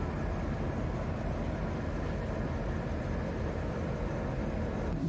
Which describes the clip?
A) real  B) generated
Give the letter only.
A